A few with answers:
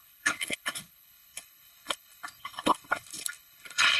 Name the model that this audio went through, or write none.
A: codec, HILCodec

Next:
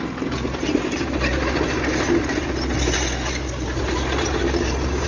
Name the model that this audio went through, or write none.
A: none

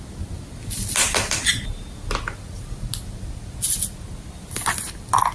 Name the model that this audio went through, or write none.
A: none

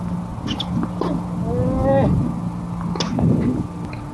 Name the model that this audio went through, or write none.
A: none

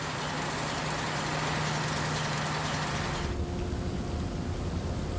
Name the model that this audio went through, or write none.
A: none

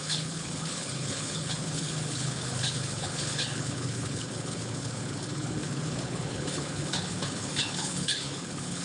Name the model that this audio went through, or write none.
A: codec, HILCodec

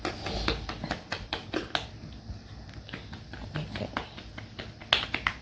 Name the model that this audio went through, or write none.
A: none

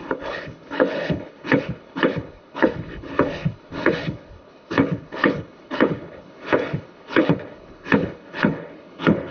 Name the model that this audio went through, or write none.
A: codec, HILCodec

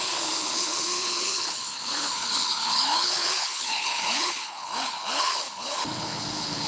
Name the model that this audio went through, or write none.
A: codec, HILCodec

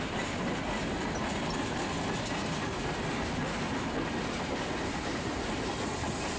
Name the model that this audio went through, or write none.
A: none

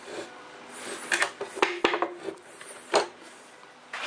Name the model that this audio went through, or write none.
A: none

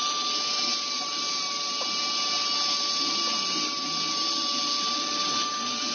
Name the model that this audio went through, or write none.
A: none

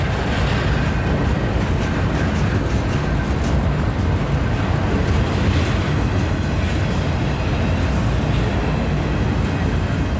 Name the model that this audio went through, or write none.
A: none